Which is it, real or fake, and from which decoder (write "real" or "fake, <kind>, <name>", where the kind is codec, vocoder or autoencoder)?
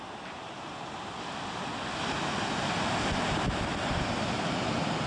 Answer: real